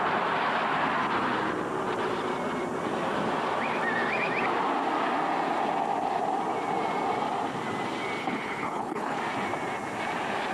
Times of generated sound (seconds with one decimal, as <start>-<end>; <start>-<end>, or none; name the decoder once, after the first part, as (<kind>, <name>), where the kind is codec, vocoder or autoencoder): 8.2-9.2 (codec, HILCodec)